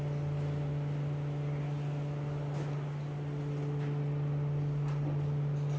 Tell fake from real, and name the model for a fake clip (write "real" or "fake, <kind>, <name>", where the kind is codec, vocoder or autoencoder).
real